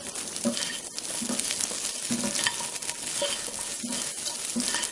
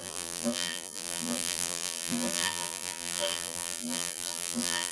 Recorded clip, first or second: first